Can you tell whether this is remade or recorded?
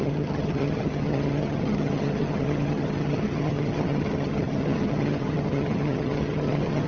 remade